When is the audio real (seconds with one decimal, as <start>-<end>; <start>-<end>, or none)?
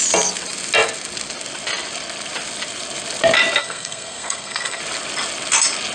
0.0-3.6; 4.8-5.9